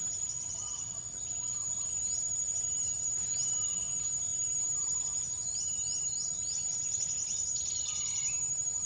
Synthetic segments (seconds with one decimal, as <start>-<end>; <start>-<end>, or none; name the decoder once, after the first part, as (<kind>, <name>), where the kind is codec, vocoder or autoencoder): none